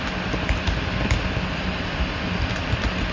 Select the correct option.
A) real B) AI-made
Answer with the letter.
A